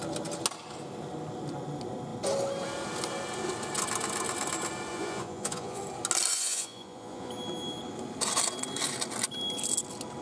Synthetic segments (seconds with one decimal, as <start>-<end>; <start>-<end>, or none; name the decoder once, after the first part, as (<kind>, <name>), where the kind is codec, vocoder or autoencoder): 4.9-5.8 (vocoder, Vocos); 6.3-7.3